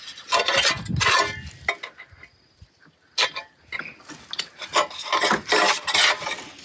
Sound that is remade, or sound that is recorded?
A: recorded